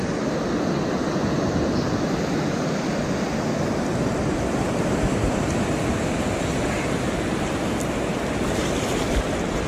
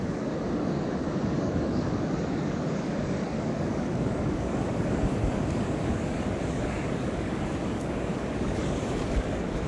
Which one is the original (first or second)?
first